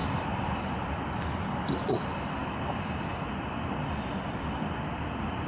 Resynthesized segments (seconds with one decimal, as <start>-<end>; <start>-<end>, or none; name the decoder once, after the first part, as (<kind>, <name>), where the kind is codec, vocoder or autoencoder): 0.0-5.5 (vocoder, BigVGAN v2)